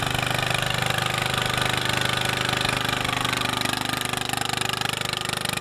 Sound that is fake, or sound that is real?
real